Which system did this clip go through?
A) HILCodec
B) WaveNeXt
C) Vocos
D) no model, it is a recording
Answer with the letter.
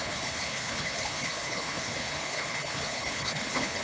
A